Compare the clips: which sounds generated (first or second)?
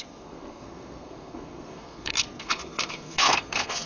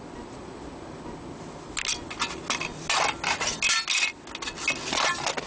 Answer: first